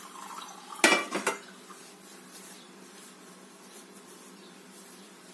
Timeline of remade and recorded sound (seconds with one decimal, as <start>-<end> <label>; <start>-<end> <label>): 0.0-1.8 recorded; 1.8-5.3 remade